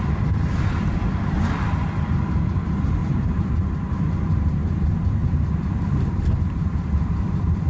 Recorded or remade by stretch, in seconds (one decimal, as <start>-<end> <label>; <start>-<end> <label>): 0.0-3.0 recorded; 3.0-3.5 remade; 3.5-5.2 recorded; 5.2-7.7 remade